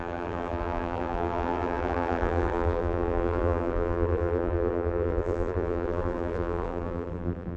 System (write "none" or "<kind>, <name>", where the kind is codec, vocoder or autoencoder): vocoder, BigVGAN v2